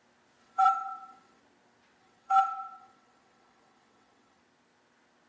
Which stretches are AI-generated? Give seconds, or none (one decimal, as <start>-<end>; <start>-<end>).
0.4-1.4; 2.0-4.4